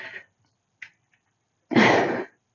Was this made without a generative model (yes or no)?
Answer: yes